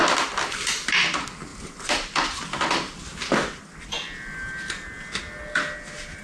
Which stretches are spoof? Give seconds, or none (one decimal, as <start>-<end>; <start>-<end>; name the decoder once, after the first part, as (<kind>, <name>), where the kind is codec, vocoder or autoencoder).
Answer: none